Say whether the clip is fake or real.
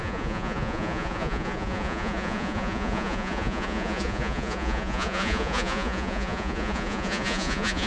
fake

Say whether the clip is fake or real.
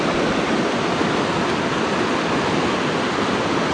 real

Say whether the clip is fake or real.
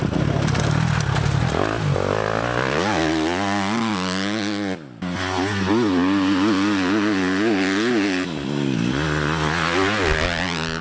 real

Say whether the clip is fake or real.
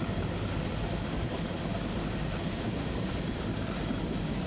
real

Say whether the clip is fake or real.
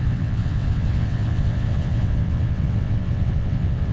fake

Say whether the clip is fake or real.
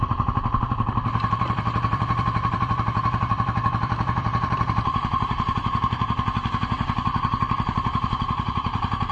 fake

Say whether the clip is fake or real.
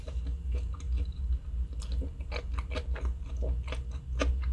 real